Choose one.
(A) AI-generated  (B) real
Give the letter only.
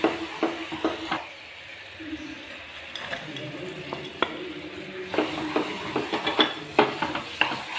B